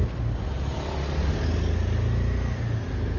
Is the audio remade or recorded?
recorded